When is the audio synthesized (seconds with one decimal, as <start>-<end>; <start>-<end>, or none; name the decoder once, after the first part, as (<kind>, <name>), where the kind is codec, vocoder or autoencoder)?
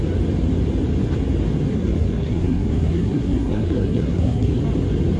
1.7-4.6 (codec, SNAC)